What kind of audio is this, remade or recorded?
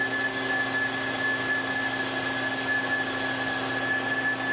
recorded